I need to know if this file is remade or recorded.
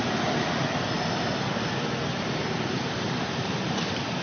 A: recorded